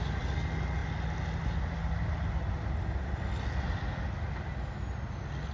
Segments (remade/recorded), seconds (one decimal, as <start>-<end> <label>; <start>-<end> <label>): 0.0-5.5 recorded